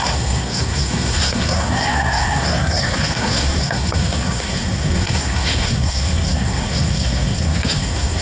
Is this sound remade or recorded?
remade